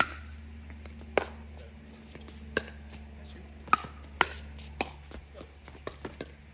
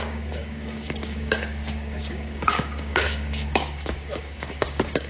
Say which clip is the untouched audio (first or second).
first